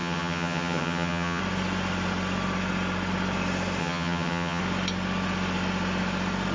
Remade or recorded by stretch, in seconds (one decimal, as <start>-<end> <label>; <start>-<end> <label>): 0.0-1.4 remade; 1.4-3.8 recorded; 3.8-4.6 remade; 4.6-6.5 recorded